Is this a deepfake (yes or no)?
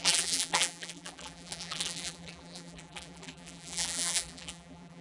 yes